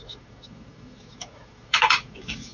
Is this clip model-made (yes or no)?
yes